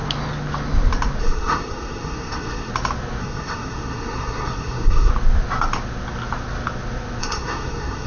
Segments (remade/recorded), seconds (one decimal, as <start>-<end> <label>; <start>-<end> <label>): 0.0-1.2 recorded; 1.2-2.7 remade; 2.7-3.2 recorded; 3.2-5.1 remade; 5.1-7.2 recorded; 7.2-8.1 remade